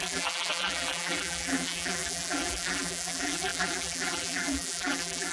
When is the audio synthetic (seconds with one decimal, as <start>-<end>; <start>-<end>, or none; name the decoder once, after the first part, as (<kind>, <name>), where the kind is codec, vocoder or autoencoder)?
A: 0.0-5.3 (vocoder, BigVGAN v2)